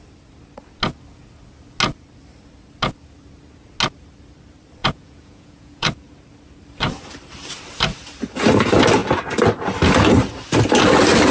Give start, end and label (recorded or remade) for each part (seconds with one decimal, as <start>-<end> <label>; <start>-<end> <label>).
0.0-4.8 recorded; 4.8-5.9 remade; 5.9-11.3 recorded